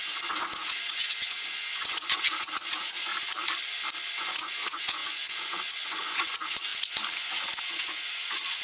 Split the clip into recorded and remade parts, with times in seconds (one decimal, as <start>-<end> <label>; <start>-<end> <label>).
0.0-3.1 remade; 3.1-4.2 recorded; 4.2-6.7 remade; 6.7-7.2 recorded; 7.2-8.6 remade